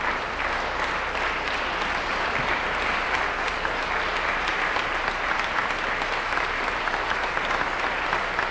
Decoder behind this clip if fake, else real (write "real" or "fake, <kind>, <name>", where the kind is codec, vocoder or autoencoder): fake, vocoder, BigVGAN v2